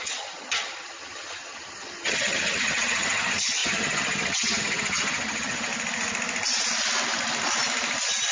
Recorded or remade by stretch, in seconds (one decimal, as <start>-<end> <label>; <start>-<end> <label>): 0.0-5.7 remade; 5.7-8.3 recorded